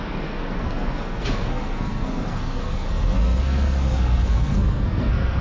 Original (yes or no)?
no